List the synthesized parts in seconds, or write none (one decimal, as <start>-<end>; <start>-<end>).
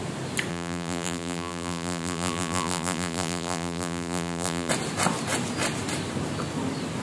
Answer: 0.5-4.7